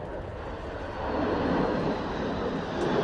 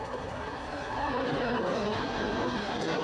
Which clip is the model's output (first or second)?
second